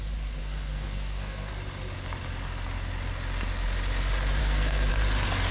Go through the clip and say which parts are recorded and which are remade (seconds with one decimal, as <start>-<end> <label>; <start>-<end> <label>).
0.0-0.4 recorded; 0.4-1.5 remade; 1.5-4.4 recorded; 4.4-4.9 remade; 4.9-5.5 recorded